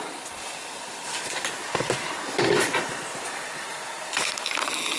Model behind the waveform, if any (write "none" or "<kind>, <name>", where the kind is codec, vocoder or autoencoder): none